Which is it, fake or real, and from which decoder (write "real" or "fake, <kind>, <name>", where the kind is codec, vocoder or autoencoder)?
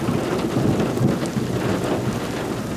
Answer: real